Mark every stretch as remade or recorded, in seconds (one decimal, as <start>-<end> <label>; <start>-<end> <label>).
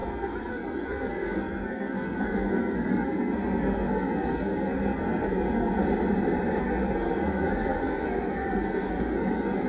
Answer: 0.0-5.8 remade; 5.8-6.6 recorded; 6.6-9.7 remade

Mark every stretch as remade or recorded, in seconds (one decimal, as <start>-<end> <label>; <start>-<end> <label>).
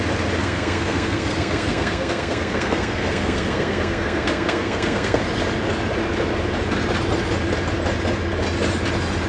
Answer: 0.0-0.4 recorded; 0.4-5.2 remade; 5.2-9.3 recorded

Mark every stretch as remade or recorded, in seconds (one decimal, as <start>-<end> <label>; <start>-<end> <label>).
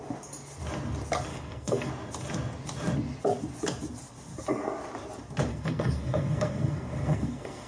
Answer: 0.0-1.3 recorded; 1.3-1.9 remade; 1.9-5.5 recorded; 5.5-7.7 remade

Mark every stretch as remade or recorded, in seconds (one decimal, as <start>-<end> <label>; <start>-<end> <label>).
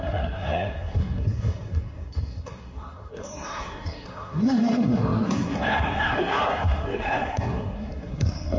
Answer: 0.0-8.6 remade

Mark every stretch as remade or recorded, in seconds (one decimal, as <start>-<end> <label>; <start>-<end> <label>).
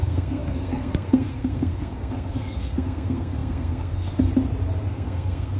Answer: 0.0-4.3 remade; 4.3-4.9 recorded; 4.9-5.6 remade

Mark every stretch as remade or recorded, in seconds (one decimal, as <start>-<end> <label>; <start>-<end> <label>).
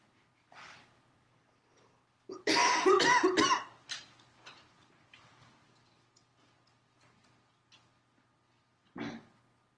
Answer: 0.0-9.8 recorded